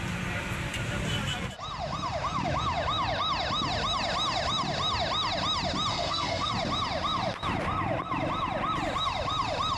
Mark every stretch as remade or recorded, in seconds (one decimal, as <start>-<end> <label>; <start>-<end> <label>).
0.0-5.9 recorded; 5.9-6.5 remade; 6.5-9.8 recorded